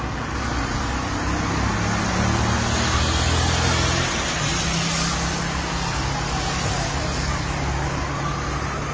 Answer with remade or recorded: recorded